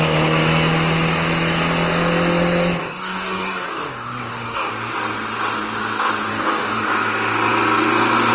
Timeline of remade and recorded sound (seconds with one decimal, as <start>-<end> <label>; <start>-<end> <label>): 0.0-2.8 recorded; 2.8-4.7 remade; 4.7-6.3 recorded; 6.3-6.8 remade; 6.8-8.3 recorded